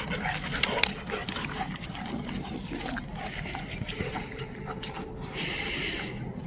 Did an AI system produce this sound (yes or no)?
no